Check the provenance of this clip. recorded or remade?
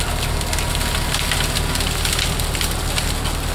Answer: recorded